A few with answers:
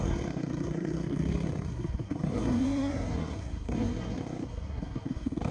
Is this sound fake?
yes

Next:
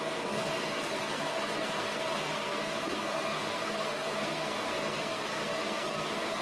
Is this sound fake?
yes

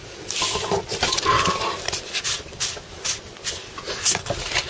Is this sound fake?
no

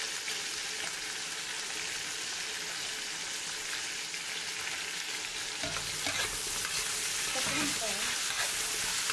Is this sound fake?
no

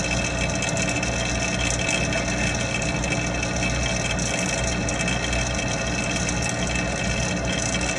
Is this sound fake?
no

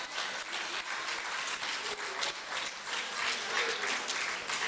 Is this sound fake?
no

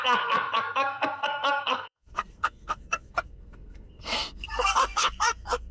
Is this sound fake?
yes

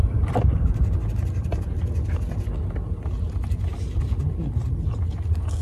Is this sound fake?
no